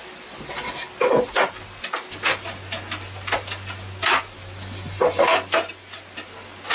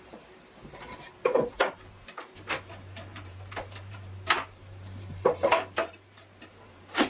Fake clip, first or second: second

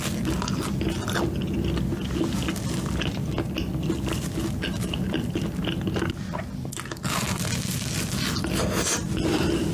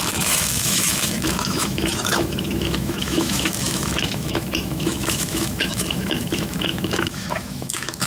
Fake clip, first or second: second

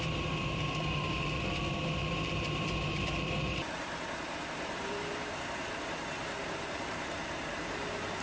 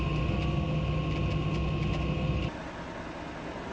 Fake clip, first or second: first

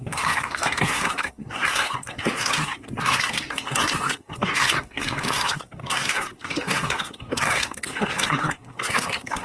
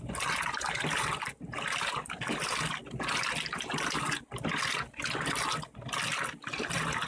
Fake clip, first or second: first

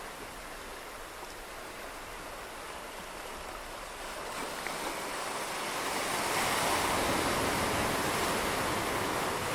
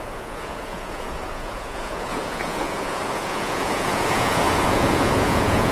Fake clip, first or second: second